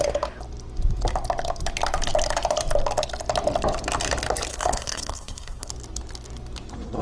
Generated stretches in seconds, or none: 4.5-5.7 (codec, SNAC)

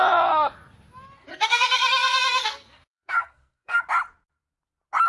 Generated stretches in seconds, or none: 1.3-3.8 (codec, SNAC)

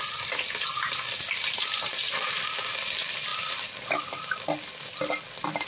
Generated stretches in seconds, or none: none

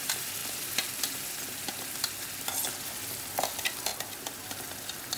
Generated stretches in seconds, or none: none

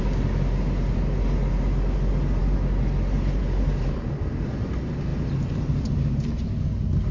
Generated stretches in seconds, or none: none